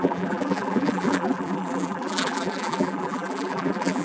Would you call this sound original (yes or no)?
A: no